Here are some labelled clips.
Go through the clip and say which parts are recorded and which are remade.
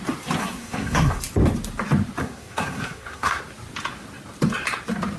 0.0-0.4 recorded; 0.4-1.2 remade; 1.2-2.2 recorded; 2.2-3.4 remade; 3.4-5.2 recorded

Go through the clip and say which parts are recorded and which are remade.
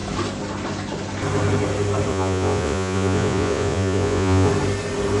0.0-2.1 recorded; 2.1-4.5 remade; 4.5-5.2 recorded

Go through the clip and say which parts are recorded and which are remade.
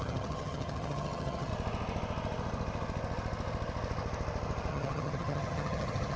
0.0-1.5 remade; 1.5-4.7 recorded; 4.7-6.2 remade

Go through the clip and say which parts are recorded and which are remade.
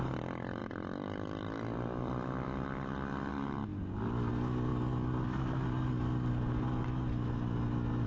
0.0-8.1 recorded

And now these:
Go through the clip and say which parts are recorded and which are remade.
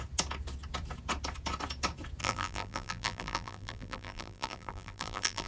0.0-2.2 recorded; 2.2-5.5 remade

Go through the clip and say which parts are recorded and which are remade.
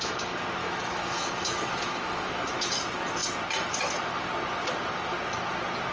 0.0-0.6 recorded; 0.6-2.7 remade; 2.7-5.9 recorded